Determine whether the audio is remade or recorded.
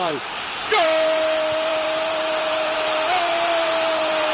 remade